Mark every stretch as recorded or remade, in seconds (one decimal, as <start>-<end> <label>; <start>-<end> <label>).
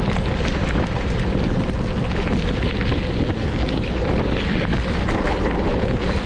0.0-3.4 recorded; 3.4-4.8 remade; 4.8-6.3 recorded